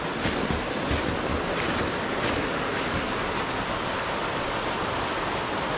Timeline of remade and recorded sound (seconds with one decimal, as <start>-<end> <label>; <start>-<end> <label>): 0.0-5.8 recorded